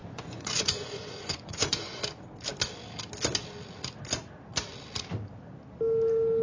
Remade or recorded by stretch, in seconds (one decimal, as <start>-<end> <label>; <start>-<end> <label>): 0.0-2.0 remade; 2.0-6.4 recorded